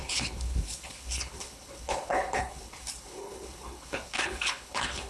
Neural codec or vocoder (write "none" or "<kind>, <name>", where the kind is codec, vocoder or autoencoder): codec, HILCodec